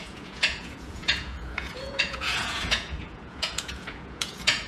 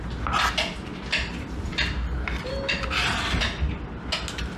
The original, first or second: second